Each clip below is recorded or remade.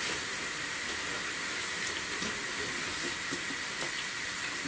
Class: recorded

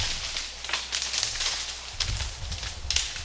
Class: recorded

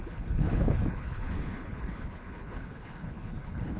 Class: remade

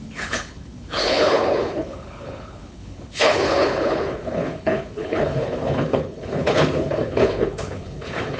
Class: remade